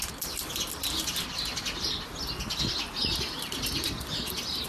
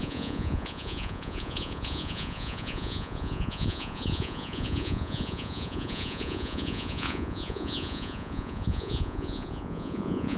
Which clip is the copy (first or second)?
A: second